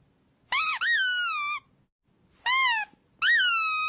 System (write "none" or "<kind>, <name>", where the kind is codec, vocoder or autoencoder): none